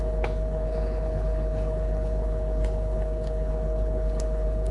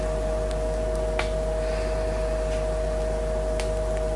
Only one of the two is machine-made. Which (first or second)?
first